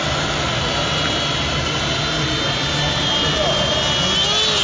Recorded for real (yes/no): yes